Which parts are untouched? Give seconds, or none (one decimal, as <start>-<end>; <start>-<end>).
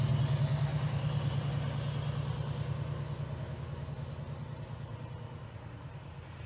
0.0-0.7; 1.5-6.5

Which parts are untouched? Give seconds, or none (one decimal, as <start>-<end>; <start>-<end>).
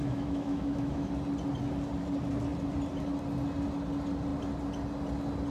1.1-5.5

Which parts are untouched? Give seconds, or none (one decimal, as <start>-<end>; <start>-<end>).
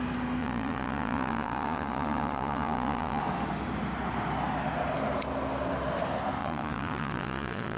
0.0-0.4; 3.2-6.4